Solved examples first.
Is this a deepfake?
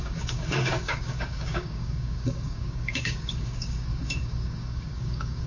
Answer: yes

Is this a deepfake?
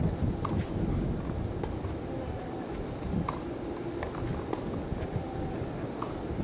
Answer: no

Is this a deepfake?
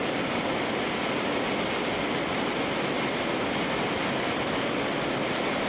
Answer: no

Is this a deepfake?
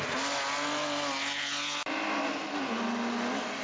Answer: no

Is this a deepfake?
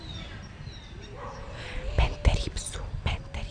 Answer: no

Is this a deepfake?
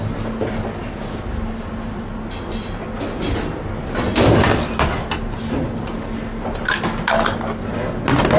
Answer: no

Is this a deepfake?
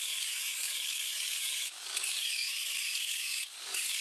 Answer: yes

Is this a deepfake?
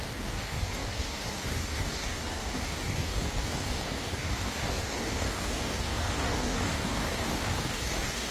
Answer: yes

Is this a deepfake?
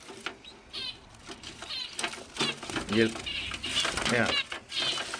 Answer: no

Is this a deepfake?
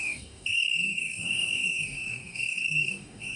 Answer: yes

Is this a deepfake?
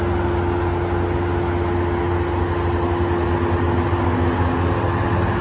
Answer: no